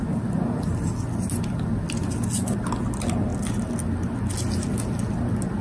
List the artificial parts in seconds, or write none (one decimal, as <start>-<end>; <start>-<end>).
none